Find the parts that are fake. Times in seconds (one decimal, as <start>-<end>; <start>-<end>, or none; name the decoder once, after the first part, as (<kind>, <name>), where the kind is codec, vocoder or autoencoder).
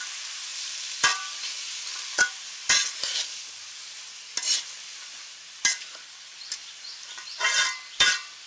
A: 0.5-3.5 (vocoder, BigVGAN v2); 6.6-7.4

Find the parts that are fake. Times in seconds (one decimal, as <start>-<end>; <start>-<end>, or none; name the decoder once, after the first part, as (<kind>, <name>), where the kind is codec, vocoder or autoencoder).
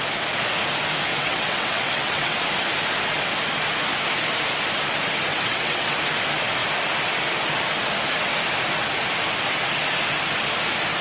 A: 1.1-2.4 (vocoder, WaveNeXt); 5.3-6.0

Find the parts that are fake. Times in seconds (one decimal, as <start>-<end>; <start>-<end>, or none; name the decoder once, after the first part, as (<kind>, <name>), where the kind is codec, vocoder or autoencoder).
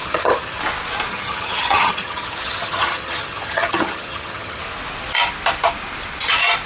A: 0.0-0.6 (vocoder, HiFi-GAN); 1.1-4.6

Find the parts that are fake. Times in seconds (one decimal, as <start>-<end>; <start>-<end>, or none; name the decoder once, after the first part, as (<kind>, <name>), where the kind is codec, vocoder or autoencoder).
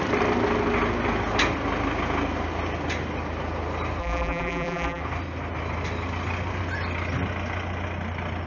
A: 4.0-5.0 (vocoder, BigVGAN v2)